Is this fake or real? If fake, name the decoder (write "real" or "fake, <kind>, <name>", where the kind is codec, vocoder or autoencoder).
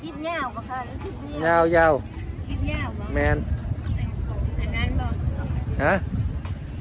real